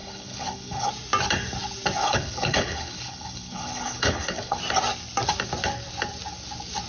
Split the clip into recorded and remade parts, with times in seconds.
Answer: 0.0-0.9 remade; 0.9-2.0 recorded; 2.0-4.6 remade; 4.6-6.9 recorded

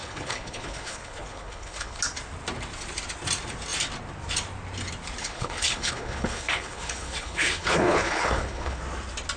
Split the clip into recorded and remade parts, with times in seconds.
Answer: 0.0-2.0 remade; 2.0-5.2 recorded; 5.2-8.8 remade; 8.8-9.4 recorded

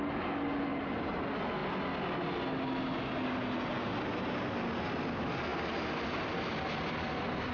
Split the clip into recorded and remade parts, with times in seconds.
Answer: 0.0-0.7 recorded; 0.7-1.2 remade; 1.2-7.5 recorded

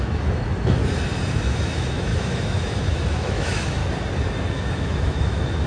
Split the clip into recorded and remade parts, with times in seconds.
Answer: 0.0-0.8 remade; 0.8-1.3 recorded; 1.3-3.8 remade; 3.8-4.5 recorded; 4.5-5.7 remade

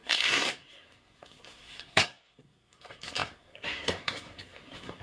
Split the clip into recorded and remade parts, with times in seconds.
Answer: 0.0-5.0 remade

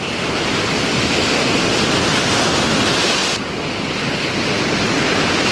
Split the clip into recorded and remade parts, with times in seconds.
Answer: 0.0-5.5 recorded

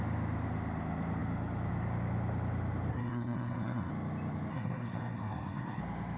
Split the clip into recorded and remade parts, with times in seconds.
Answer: 0.0-2.9 recorded; 2.9-3.9 remade; 3.9-4.5 recorded; 4.5-5.8 remade; 5.8-6.2 recorded

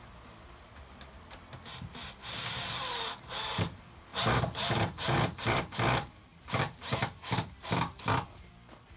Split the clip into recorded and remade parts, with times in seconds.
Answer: 0.0-4.1 recorded; 4.1-5.6 remade; 5.6-6.3 recorded; 6.3-8.5 remade; 8.5-9.0 recorded